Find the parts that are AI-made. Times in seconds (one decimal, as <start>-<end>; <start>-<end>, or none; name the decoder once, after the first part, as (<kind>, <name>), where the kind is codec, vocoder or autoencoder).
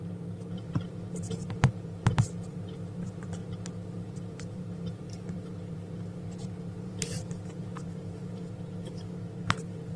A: 0.0-10.0 (vocoder, BigVGAN v2)